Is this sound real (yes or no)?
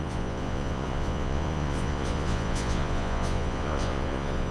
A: no